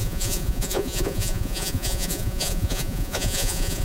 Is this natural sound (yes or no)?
no